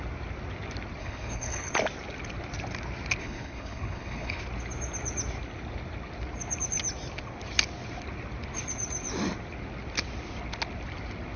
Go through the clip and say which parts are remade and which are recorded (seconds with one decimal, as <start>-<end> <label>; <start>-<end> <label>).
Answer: 0.0-1.0 recorded; 1.0-1.7 remade; 1.7-3.2 recorded; 3.2-4.4 remade; 4.4-11.4 recorded